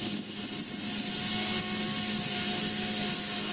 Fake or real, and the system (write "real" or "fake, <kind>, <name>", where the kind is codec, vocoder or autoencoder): real